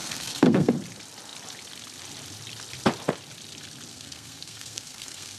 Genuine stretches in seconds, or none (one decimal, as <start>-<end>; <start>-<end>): 0.7-3.9